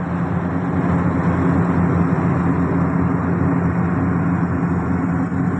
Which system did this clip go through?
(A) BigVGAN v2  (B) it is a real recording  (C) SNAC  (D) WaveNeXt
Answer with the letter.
B